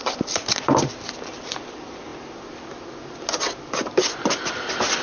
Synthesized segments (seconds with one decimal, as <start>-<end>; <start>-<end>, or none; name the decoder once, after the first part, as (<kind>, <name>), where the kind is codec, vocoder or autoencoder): 0.0-2.1 (vocoder, BigVGAN v2); 4.4-5.0